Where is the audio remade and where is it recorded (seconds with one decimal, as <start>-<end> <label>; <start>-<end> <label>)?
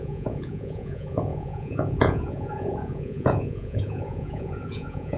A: 0.0-5.2 remade